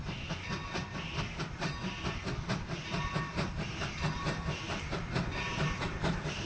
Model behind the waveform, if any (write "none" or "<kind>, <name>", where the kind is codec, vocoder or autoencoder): none